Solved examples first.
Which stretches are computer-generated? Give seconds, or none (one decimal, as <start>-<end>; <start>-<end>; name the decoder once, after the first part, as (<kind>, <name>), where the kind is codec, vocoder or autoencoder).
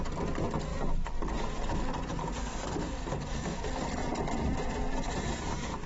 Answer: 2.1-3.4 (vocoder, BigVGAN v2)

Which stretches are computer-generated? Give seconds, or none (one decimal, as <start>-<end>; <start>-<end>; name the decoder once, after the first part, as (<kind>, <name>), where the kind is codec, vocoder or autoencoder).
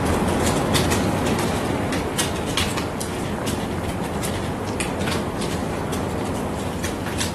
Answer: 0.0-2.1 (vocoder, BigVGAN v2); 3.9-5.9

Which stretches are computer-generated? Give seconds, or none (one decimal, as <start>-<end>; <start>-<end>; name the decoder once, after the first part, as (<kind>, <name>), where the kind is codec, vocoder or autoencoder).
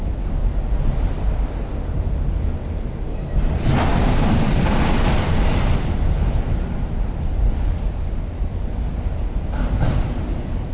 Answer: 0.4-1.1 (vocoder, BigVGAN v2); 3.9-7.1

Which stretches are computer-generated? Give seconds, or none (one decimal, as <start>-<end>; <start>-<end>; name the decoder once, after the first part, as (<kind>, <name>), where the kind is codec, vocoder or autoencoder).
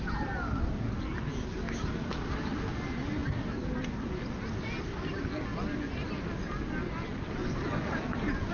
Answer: 5.5-6.1 (vocoder, BigVGAN v2)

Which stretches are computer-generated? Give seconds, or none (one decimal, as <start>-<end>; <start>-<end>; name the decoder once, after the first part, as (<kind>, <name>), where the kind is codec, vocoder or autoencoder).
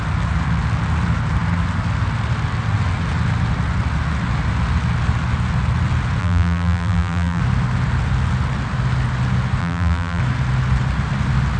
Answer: 6.2-7.4 (vocoder, BigVGAN v2); 9.6-10.2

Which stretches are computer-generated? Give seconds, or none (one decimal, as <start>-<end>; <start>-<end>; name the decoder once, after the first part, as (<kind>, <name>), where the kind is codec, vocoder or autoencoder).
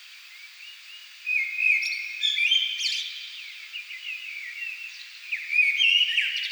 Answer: none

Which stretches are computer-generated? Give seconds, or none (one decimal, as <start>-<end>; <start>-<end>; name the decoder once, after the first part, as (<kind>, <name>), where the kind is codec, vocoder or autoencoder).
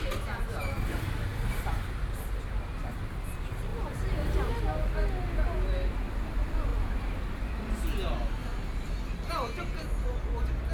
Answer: 3.7-4.6 (vocoder, BigVGAN v2); 6.7-7.7; 8.5-9.3